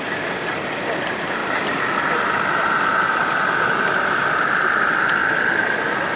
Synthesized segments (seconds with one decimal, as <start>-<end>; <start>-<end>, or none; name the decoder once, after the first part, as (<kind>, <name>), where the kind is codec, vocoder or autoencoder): 1.4-3.4 (vocoder, BigVGAN v2)